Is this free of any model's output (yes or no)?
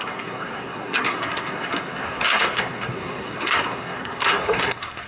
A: no